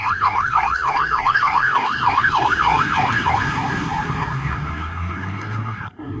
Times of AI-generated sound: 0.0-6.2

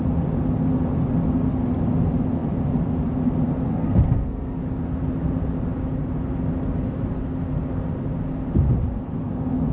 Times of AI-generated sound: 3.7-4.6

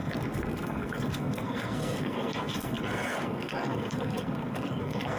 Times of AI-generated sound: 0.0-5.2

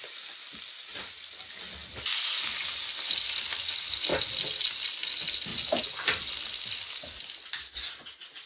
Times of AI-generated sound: none